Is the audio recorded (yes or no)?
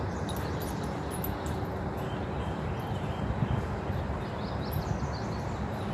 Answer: yes